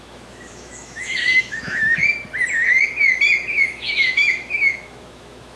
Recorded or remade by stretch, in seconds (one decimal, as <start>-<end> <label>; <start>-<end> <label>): 0.0-2.0 remade; 2.0-3.5 recorded; 3.5-5.6 remade